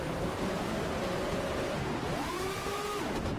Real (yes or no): no